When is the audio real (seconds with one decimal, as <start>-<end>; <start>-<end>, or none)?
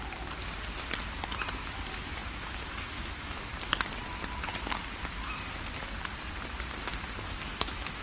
0.0-1.5; 3.5-7.2